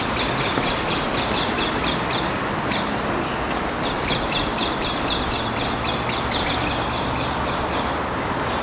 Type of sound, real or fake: real